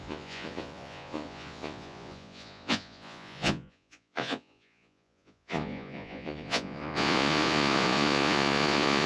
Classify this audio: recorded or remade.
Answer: remade